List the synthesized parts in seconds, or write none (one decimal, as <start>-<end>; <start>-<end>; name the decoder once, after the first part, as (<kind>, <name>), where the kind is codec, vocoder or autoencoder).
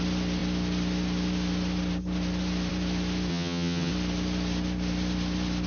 3.3-3.9 (vocoder, HiFi-GAN)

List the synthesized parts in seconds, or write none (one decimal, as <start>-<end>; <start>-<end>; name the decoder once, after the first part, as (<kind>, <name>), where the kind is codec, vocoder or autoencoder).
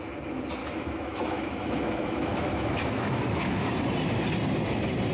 0.6-3.7 (autoencoder, DAC-VAE)